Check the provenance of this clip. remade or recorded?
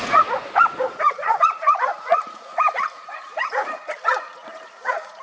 remade